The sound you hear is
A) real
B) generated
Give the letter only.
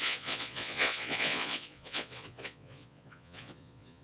B